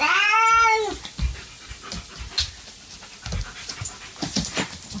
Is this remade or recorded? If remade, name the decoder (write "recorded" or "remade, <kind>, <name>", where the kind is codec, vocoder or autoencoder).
recorded